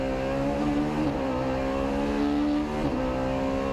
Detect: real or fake real